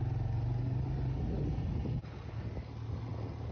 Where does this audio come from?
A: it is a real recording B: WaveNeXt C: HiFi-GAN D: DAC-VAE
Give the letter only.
A